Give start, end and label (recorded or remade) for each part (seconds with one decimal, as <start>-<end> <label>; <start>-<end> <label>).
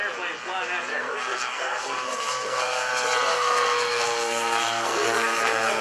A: 0.0-0.9 recorded; 0.9-2.9 remade; 2.9-3.3 recorded; 3.3-5.8 remade